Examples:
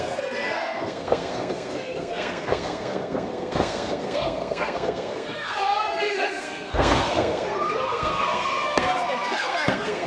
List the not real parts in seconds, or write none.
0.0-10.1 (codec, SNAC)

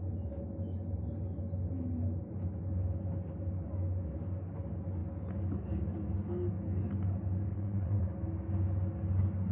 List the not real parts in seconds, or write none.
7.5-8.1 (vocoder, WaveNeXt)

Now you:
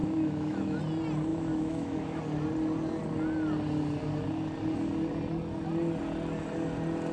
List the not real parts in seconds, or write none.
0.0-0.8 (autoencoder, DAC-VAE); 1.3-2.2